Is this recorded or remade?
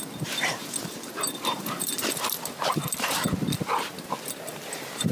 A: recorded